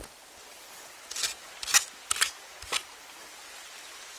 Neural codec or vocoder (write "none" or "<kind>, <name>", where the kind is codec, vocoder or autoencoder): none